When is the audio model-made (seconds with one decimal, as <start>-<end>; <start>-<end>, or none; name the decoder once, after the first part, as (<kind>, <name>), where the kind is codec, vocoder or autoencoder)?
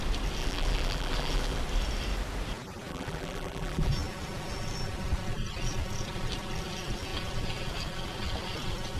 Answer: 0.4-1.6 (vocoder, BigVGAN v2); 2.9-3.9